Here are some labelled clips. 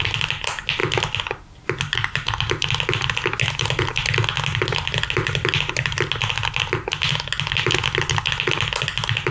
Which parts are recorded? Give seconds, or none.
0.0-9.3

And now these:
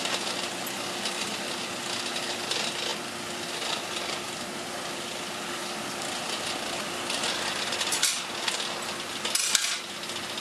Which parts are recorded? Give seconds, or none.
0.0-10.4